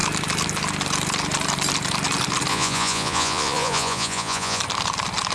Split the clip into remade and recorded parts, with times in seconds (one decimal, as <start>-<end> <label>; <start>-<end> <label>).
0.0-2.5 recorded; 2.5-4.6 remade; 4.6-5.3 recorded